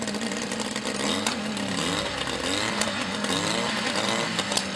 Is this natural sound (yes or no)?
yes